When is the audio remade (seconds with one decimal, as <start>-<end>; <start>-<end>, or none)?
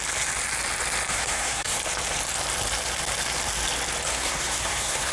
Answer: 1.1-1.8; 4.1-5.1